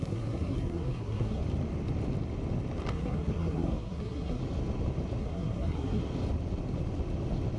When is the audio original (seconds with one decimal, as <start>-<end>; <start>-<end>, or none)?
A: 1.4-2.9; 4.4-5.2; 6.0-7.6

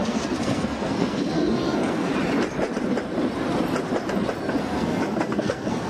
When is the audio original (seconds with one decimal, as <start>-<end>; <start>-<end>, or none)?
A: 2.1-4.6

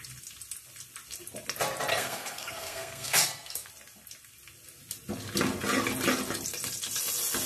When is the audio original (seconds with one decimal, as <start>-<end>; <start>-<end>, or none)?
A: 0.0-1.9; 3.7-7.5

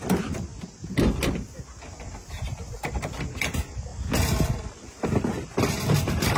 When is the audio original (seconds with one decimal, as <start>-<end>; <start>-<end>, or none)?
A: 0.0-6.4

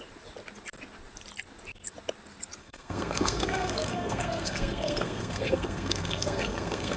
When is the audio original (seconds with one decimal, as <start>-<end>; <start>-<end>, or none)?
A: 0.0-2.6

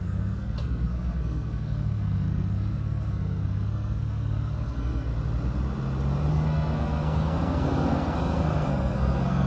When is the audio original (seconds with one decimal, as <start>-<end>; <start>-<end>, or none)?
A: 5.1-6.3

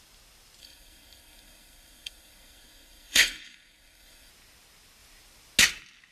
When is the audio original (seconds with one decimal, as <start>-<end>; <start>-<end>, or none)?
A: 0.0-0.6; 4.3-6.1

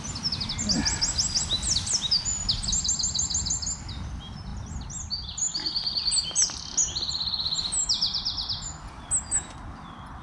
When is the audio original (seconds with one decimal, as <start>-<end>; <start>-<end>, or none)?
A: 0.0-10.2